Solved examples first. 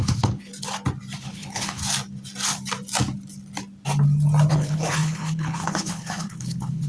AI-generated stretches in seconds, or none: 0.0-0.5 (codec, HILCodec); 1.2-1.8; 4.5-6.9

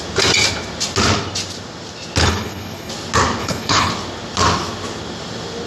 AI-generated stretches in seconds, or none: 2.2-2.9 (codec, HILCodec); 3.4-3.9

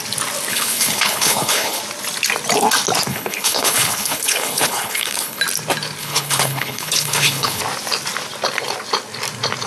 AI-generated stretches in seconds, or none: 0.5-1.8 (codec, HILCodec); 3.1-5.4; 6.0-7.6

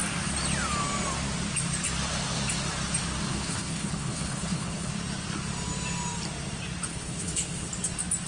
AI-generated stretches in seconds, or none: 3.3-4.9 (codec, HILCodec); 6.9-7.7

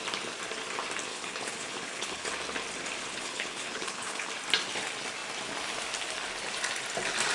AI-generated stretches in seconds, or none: 1.1-2.3 (codec, HILCodec); 3.0-4.3

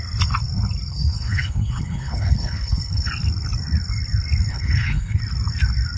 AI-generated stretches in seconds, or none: 0.9-3.1 (codec, HILCodec); 4.5-5.2

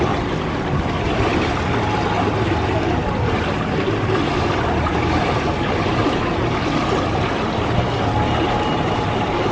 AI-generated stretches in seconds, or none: none